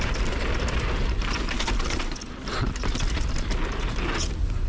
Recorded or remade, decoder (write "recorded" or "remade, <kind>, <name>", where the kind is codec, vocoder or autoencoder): recorded